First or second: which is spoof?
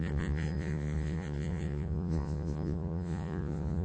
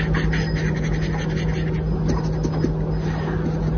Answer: first